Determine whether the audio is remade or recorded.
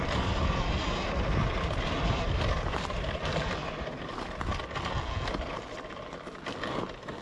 recorded